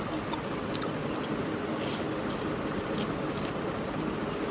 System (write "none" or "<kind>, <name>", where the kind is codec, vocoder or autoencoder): none